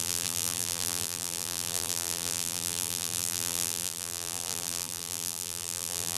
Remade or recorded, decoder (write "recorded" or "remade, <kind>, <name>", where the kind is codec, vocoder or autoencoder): remade, vocoder, BigVGAN v2